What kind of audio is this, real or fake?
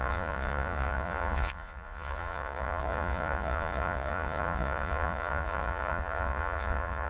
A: fake